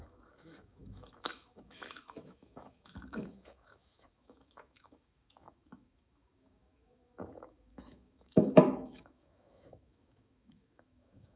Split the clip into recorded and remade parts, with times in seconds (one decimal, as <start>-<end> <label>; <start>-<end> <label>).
0.0-11.4 remade